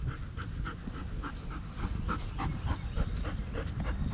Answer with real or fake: real